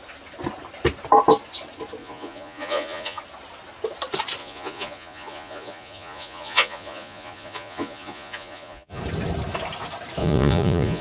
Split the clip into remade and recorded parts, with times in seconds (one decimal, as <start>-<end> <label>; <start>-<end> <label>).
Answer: 0.0-2.0 recorded; 2.0-3.2 remade; 3.2-4.4 recorded; 4.4-9.0 remade; 9.0-10.2 recorded; 10.2-11.0 remade